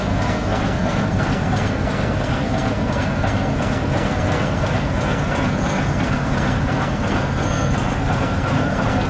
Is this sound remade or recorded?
remade